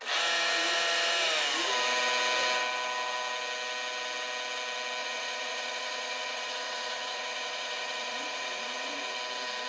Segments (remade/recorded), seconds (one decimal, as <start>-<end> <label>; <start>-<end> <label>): 0.0-5.0 recorded; 5.0-9.2 remade; 9.2-9.7 recorded

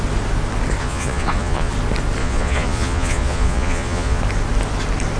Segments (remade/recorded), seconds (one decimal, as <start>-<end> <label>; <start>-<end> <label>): 0.0-0.8 recorded; 0.8-1.7 remade; 1.7-2.2 recorded; 2.2-4.2 remade; 4.2-5.2 recorded

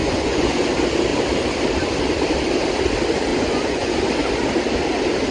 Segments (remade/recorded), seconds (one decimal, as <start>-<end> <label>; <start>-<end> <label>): 0.0-0.6 remade; 0.6-3.3 recorded; 3.3-3.9 remade; 3.9-5.3 recorded

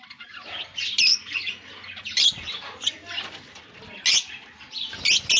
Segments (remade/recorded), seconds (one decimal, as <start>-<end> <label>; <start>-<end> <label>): 0.0-5.4 recorded

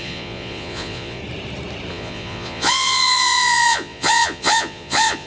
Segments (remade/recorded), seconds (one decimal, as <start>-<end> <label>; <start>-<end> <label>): 0.0-1.2 remade; 1.2-1.9 recorded; 1.9-5.3 remade

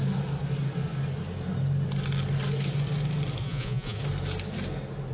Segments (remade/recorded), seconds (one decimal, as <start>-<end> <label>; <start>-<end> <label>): 0.0-3.4 recorded; 3.4-4.0 remade; 4.0-5.1 recorded

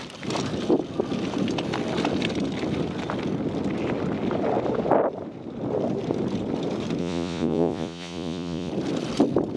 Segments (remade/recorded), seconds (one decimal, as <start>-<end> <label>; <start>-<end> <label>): 0.0-7.0 recorded; 7.0-8.7 remade; 8.7-9.6 recorded